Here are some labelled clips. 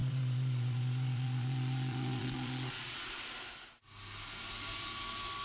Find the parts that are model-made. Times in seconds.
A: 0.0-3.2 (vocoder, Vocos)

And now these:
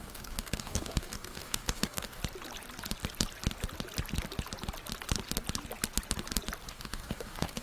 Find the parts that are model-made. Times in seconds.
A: 0.0-2.2 (codec, DAC); 6.7-7.6